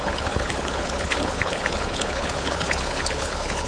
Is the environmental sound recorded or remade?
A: remade